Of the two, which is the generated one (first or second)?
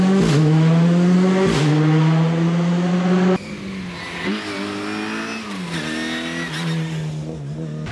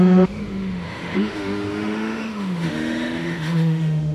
second